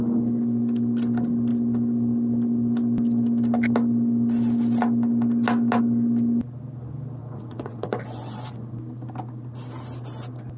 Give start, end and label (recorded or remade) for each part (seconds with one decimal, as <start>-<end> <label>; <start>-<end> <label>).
0.0-7.2 recorded; 7.2-8.8 remade; 8.8-10.6 recorded

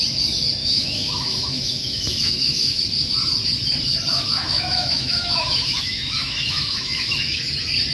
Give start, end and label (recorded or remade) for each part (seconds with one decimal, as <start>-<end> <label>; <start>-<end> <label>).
0.0-0.6 recorded; 0.6-2.8 remade; 2.8-4.1 recorded; 4.1-7.4 remade; 7.4-7.9 recorded

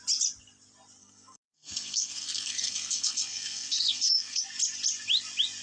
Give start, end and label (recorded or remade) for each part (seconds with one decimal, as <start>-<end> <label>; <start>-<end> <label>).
0.0-1.0 recorded; 1.0-4.4 remade; 4.4-5.6 recorded

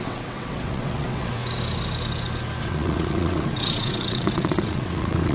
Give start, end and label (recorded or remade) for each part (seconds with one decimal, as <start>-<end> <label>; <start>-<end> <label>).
0.0-1.4 remade; 1.4-2.6 recorded; 2.6-5.3 remade

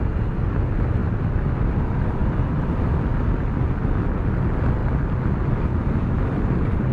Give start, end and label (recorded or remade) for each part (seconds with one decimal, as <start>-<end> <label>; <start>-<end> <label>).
0.0-2.2 recorded; 2.2-2.9 remade; 2.9-4.8 recorded; 4.8-6.9 remade